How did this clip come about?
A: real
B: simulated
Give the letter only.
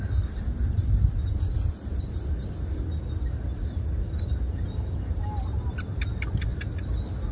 A